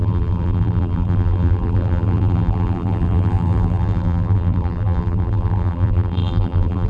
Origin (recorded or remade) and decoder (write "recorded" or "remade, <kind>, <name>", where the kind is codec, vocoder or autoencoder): remade, vocoder, BigVGAN v2